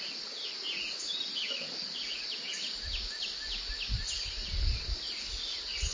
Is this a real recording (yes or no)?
yes